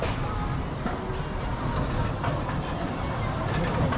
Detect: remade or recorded recorded